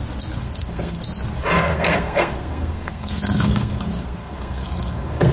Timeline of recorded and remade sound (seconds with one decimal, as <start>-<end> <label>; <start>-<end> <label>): 0.0-0.4 recorded; 0.4-1.0 remade; 1.0-1.7 recorded; 1.7-5.3 remade

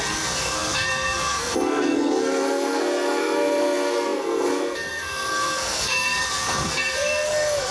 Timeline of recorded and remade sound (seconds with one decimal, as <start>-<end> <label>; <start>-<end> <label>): 0.0-7.7 remade

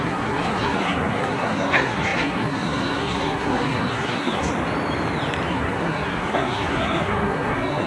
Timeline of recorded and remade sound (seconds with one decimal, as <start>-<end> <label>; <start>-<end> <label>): 0.0-4.5 remade; 4.5-5.5 recorded; 5.5-7.9 remade